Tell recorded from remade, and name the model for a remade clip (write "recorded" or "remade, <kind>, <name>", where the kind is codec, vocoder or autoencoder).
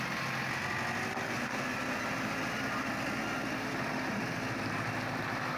recorded